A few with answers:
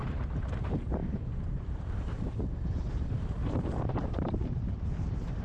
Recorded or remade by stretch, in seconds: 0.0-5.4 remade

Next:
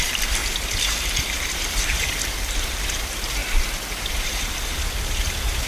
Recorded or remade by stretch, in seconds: 0.0-0.4 remade; 0.4-0.9 recorded; 0.9-3.4 remade; 3.4-4.0 recorded; 4.0-5.7 remade

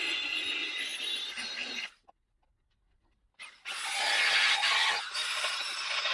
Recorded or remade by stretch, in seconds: 0.0-6.1 recorded